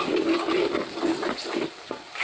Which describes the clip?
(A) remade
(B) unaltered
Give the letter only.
B